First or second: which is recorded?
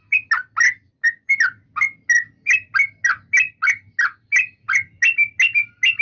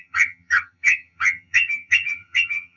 first